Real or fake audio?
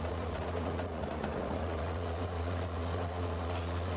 fake